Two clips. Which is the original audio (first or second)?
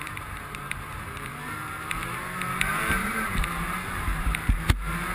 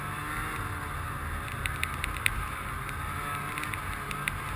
second